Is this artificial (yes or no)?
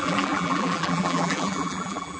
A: yes